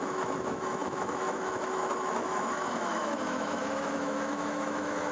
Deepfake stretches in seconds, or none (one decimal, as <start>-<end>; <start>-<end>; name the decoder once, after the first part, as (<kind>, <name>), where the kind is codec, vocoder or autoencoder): 0.0-5.1 (autoencoder, DAC-VAE)

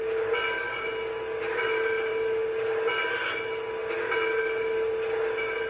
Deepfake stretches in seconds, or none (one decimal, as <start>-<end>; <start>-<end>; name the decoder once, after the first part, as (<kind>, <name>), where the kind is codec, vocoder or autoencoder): none

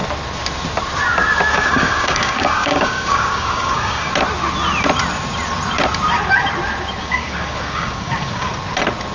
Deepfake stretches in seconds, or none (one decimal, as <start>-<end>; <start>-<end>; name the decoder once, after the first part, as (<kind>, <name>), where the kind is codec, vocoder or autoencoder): 1.5-4.1 (codec, DAC); 7.0-8.5

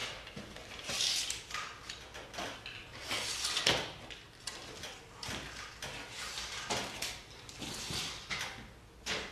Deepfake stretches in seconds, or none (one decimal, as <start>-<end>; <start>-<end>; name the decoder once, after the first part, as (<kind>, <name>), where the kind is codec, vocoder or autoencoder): none

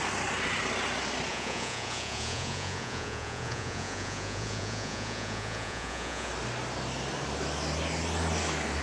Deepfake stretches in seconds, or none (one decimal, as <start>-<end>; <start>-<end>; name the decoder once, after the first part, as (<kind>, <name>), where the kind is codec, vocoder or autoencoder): 1.3-6.3 (vocoder, Vocos)

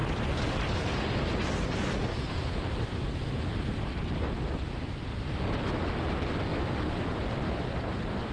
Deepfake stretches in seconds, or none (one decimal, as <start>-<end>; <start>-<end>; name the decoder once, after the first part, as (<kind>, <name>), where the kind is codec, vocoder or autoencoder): 0.0-2.3 (vocoder, BigVGAN v2); 6.5-8.3

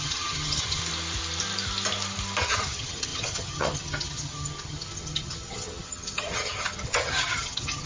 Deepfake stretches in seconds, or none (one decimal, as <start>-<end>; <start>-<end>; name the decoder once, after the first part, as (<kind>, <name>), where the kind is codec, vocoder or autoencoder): 0.0-0.8 (vocoder, HiFi-GAN); 2.4-7.9